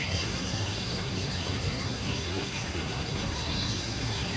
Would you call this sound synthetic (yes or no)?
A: yes